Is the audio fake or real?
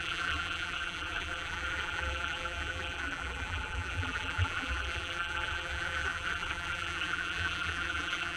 fake